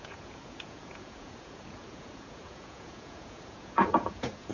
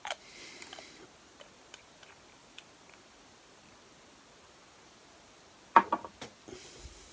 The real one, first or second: second